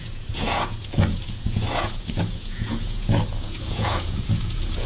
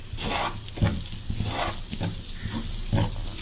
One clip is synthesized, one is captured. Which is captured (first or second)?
second